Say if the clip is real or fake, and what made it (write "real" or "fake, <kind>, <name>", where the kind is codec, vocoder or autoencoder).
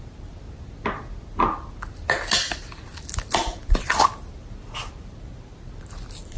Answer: real